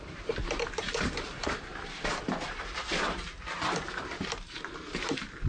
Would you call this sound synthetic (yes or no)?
yes